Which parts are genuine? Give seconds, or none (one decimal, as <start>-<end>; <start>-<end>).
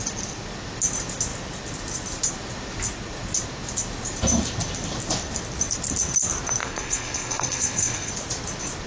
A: 0.0-6.6; 8.1-8.9